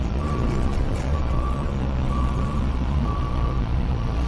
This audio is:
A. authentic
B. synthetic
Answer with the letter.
B